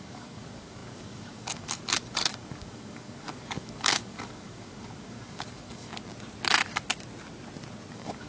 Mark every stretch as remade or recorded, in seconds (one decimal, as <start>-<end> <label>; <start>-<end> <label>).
0.0-5.9 remade; 5.9-7.9 recorded; 7.9-8.3 remade